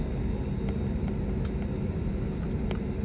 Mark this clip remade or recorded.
recorded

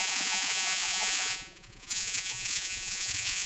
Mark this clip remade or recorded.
remade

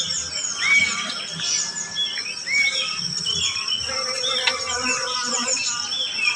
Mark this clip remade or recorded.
recorded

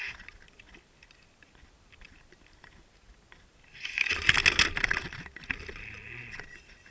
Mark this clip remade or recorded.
recorded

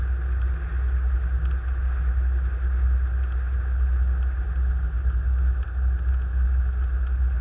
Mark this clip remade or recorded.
recorded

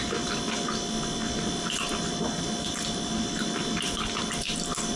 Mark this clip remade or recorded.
recorded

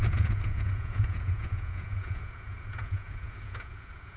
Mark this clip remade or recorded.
remade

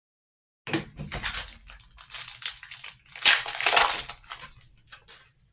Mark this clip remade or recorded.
recorded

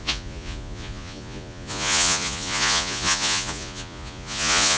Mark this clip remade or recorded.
remade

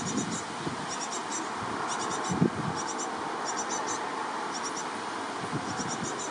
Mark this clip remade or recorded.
recorded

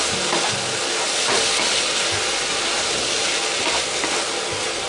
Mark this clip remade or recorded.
recorded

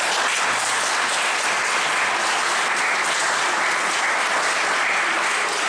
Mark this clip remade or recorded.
recorded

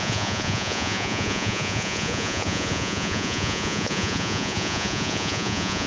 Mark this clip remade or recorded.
remade